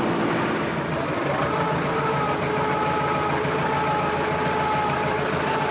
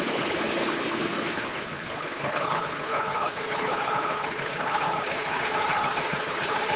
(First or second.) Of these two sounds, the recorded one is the first